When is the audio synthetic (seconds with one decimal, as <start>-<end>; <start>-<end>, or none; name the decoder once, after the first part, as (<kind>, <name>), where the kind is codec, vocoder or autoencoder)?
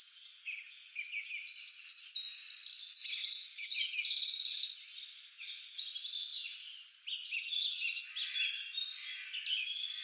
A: none